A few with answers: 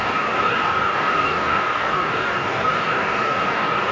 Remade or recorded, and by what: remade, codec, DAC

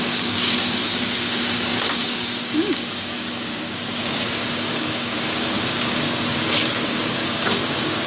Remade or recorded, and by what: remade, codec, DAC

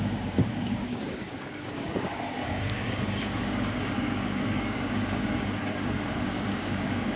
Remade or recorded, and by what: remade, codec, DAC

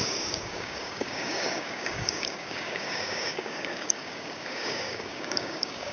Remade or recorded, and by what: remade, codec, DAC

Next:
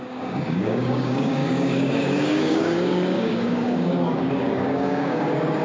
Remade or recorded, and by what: remade, codec, DAC